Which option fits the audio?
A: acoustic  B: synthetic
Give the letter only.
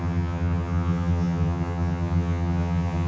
B